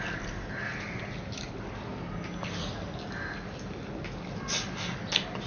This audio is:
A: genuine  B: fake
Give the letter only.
A